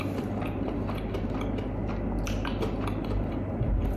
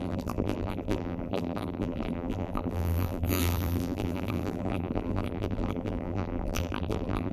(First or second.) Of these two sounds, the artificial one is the second